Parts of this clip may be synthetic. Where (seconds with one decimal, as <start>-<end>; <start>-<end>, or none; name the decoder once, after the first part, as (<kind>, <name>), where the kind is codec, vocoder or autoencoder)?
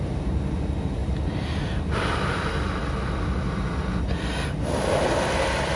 none